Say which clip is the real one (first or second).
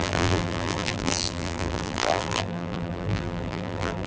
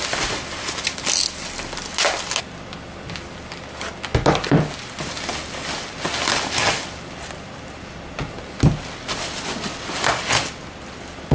second